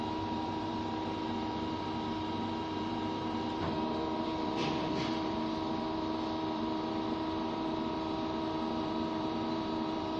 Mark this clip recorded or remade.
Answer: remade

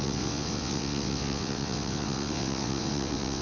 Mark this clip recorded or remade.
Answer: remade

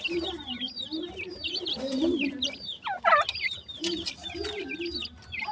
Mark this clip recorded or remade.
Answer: recorded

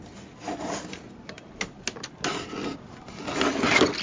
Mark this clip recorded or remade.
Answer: recorded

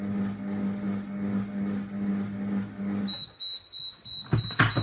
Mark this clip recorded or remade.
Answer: recorded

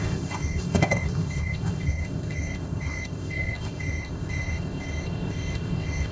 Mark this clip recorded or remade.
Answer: remade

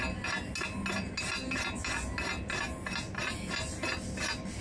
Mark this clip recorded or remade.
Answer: recorded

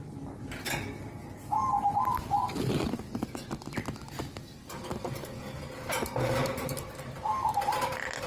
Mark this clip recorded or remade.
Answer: recorded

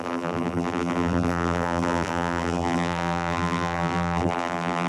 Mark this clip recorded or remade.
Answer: remade